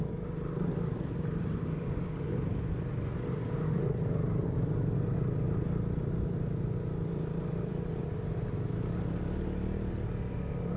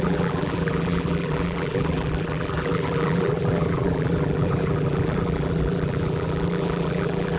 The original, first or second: first